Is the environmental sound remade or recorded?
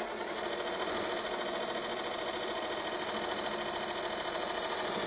recorded